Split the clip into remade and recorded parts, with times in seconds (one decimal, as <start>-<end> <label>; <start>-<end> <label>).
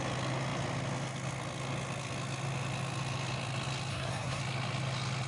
0.0-3.9 recorded; 3.9-4.4 remade; 4.4-5.3 recorded